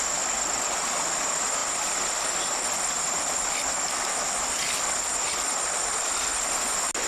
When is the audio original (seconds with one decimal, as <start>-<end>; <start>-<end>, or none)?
0.0-7.1